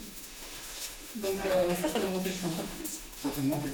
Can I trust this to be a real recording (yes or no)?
no